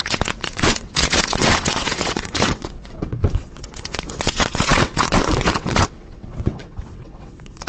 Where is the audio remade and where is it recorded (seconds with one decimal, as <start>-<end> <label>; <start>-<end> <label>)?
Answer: 0.0-7.7 remade